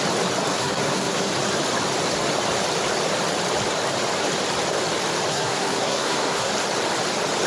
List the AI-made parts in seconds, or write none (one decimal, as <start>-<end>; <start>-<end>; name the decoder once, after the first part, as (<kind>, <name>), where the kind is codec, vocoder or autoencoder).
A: 0.5-1.3 (codec, SNAC); 5.3-6.5